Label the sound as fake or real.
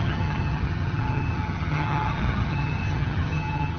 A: fake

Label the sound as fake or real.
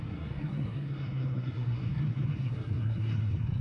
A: fake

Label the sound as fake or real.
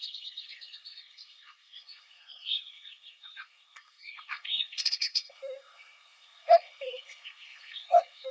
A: fake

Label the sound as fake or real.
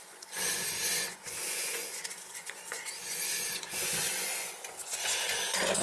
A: fake